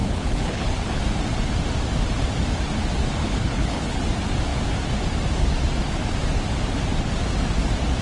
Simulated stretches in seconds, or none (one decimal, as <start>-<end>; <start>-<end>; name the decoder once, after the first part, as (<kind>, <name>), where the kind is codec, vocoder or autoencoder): 0.0-1.0 (codec, HILCodec); 3.2-4.0